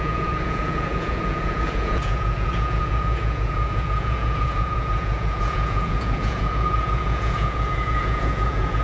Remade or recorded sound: remade